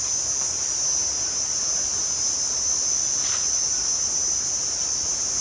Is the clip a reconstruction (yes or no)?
no